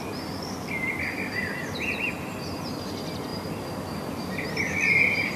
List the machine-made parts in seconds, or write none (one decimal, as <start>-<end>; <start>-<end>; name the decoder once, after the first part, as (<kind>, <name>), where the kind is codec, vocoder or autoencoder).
none